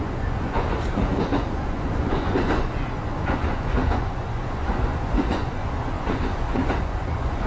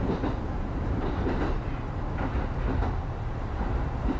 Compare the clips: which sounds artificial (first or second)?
first